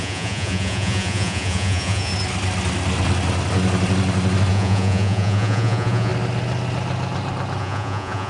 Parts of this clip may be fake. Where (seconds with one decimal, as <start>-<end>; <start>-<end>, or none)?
0.0-2.1; 4.5-6.1; 7.6-8.3